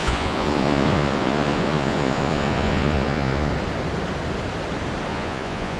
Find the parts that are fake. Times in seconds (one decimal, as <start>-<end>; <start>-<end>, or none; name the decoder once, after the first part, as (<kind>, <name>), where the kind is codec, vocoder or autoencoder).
0.0-3.5 (vocoder, Vocos); 5.1-5.8